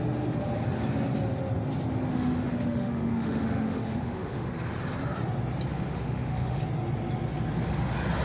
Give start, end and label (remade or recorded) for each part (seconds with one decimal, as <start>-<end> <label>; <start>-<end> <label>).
0.0-2.1 recorded; 2.1-4.5 remade; 4.5-5.7 recorded; 5.7-6.6 remade; 6.6-8.2 recorded

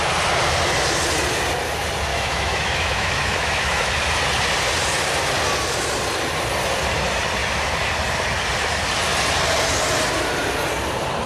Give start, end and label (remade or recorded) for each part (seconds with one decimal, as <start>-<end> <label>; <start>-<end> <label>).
0.0-2.1 recorded; 2.1-3.9 remade; 3.9-11.3 recorded